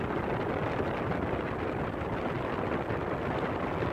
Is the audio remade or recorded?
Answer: recorded